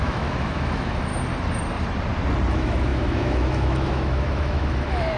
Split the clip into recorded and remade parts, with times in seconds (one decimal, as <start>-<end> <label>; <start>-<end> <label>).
0.0-1.1 remade; 1.1-2.5 recorded; 2.5-5.2 remade